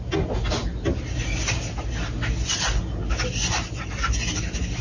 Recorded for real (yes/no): yes